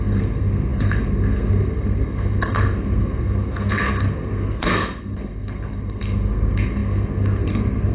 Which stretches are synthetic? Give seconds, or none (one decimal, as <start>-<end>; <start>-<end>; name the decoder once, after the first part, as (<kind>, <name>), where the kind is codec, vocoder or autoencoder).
0.0-7.9 (codec, SNAC)